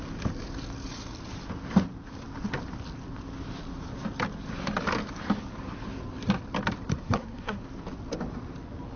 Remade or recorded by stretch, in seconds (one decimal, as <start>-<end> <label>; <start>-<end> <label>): 0.0-6.9 recorded; 6.9-7.6 remade; 7.6-9.0 recorded